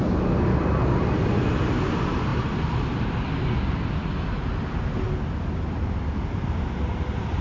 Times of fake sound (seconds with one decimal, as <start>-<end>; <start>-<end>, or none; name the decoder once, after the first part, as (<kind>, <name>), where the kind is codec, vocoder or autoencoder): none

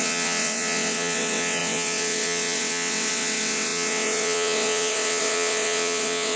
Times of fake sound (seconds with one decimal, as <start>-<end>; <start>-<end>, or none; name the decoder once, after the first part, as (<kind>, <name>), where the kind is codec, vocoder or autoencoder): 0.0-6.4 (vocoder, WaveNeXt)

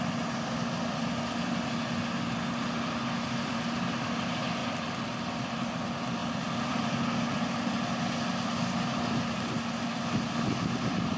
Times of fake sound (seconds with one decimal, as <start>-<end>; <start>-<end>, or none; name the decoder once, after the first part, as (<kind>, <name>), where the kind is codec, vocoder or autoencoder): none